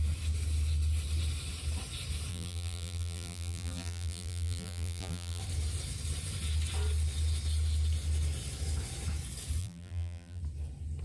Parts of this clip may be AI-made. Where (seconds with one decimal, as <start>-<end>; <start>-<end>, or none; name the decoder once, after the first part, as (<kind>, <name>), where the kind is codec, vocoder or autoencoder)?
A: 2.3-5.4 (vocoder, BigVGAN v2); 9.6-10.4